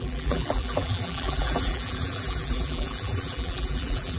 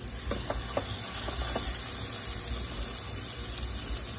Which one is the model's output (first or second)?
first